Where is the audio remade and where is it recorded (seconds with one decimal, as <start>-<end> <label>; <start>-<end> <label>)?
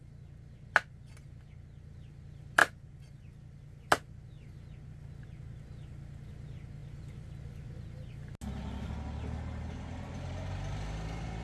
0.0-11.4 recorded